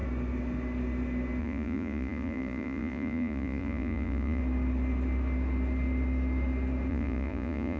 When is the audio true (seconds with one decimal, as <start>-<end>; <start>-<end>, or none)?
0.0-1.4; 4.4-6.9

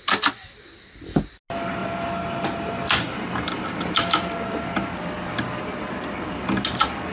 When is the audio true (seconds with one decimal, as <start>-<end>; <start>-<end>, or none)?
0.0-1.8; 6.1-7.1

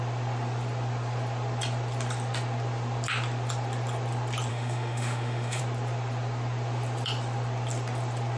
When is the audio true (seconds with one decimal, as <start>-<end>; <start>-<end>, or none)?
0.0-4.5; 5.6-8.4

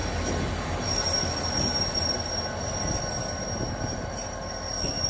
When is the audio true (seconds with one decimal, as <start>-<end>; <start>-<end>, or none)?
0.0-5.1

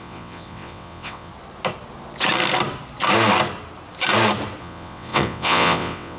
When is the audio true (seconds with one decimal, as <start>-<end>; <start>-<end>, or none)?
1.3-4.6

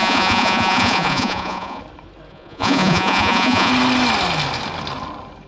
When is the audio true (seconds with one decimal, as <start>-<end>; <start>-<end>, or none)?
1.8-2.3; 3.7-5.5